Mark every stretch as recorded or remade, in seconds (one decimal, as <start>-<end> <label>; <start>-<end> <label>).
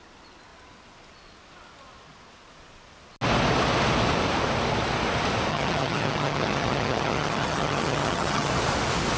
0.0-5.5 recorded; 5.5-8.5 remade; 8.5-9.2 recorded